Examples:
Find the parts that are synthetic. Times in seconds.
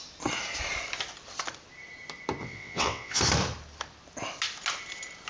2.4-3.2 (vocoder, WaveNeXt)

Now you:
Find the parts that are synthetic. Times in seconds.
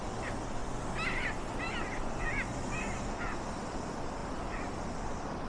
none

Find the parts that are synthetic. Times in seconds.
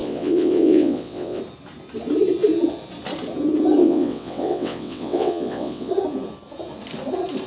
0.0-1.4 (vocoder, WaveNeXt); 3.8-5.9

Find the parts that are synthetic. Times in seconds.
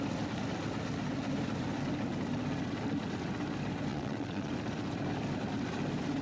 3.9-4.5 (vocoder, WaveNeXt)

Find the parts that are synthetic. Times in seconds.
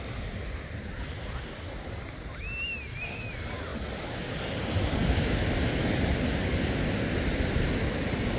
none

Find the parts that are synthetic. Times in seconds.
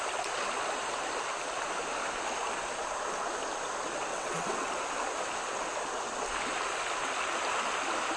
4.1-4.7 (vocoder, WaveNeXt)